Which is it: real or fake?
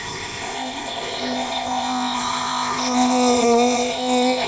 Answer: fake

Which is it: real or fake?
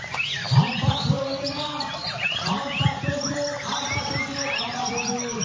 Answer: real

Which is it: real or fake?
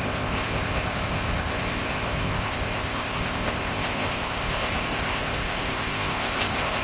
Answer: fake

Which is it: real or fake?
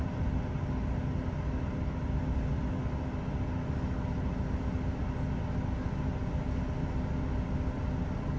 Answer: real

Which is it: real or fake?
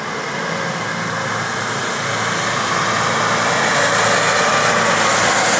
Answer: real